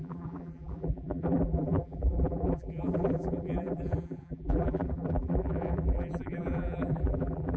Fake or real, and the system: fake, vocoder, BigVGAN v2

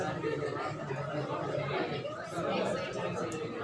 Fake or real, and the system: real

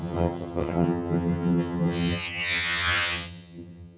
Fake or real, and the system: fake, vocoder, HiFi-GAN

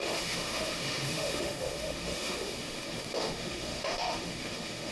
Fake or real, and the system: fake, autoencoder, DAC-VAE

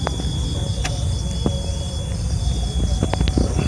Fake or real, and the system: real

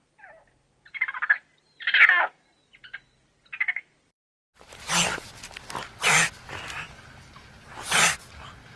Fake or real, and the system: real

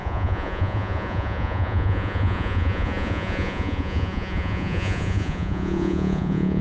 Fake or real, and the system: fake, vocoder, Vocos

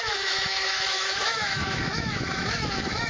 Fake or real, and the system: fake, autoencoder, DAC-VAE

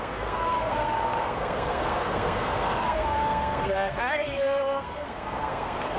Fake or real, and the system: fake, codec, SNAC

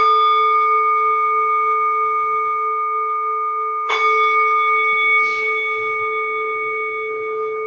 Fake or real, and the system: real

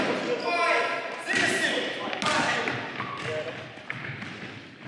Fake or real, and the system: real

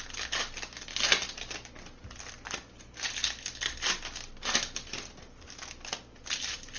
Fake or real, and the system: real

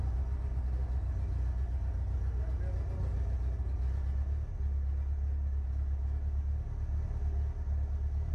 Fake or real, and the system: real